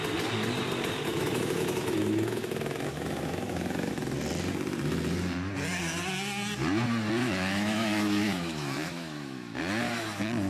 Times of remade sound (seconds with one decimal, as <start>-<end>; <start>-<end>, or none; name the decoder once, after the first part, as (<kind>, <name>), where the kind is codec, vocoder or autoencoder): 1.1-3.9 (autoencoder, DAC-VAE); 7.2-9.6